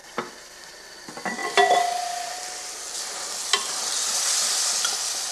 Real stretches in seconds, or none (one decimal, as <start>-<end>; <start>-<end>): 0.0-1.4; 4.6-5.3